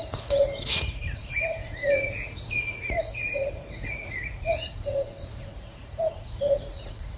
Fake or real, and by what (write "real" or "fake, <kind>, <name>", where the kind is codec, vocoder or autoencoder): fake, vocoder, Vocos